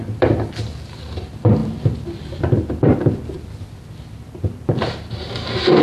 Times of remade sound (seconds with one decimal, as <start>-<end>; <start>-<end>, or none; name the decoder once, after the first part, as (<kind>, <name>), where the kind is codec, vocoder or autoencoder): none

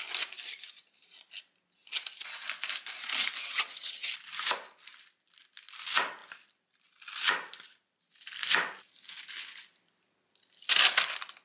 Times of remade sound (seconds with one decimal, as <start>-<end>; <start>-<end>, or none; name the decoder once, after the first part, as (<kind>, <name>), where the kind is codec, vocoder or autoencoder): 3.4-4.1 (vocoder, HiFi-GAN)

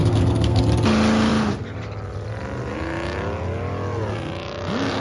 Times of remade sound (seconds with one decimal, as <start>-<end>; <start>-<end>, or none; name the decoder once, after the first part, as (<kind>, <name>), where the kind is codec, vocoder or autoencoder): 0.0-0.6 (codec, SNAC)

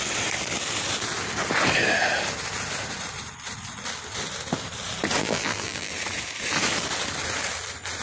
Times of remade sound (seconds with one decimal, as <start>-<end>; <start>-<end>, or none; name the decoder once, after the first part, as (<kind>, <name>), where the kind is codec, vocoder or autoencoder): 5.2-5.9 (vocoder, BigVGAN v2)

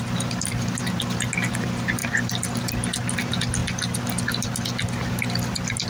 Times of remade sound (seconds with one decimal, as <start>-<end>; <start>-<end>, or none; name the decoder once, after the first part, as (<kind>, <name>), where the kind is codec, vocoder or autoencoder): none

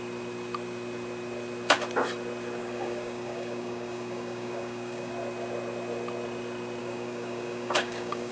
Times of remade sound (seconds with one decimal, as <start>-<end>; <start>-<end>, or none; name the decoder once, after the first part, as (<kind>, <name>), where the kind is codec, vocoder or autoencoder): 2.6-5.1 (codec, DAC); 6.8-8.3

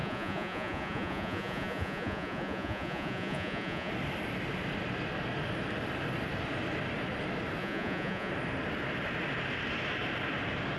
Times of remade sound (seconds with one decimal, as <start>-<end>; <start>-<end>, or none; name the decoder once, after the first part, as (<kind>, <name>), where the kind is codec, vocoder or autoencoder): 0.0-3.9 (vocoder, Vocos); 7.6-8.3

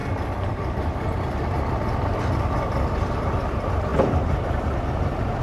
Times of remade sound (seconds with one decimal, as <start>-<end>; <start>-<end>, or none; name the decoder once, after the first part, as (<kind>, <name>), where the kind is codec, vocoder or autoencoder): 3.1-5.4 (vocoder, BigVGAN v2)